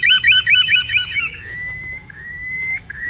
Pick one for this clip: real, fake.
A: fake